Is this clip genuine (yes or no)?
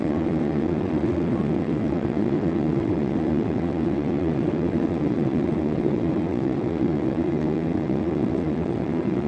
no